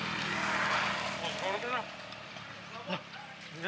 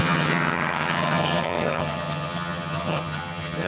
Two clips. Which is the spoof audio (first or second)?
second